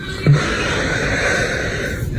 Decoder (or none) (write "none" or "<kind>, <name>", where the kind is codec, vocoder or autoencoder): none